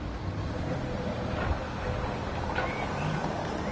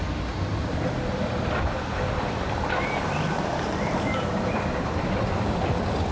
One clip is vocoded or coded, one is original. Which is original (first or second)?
first